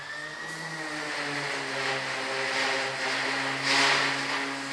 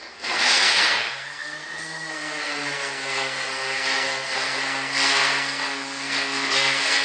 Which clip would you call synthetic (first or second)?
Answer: second